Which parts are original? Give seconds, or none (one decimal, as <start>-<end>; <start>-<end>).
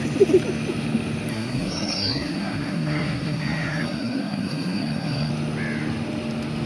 0.0-1.3; 5.3-6.7